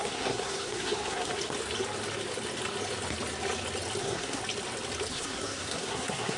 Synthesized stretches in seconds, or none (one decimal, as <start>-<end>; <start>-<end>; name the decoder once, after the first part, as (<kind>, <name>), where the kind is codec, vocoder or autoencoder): 0.0-1.3 (codec, SNAC); 4.0-4.4; 5.1-6.4